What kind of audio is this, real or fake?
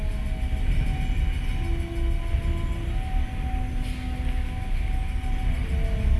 real